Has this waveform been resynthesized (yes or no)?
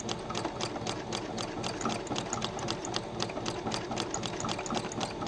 no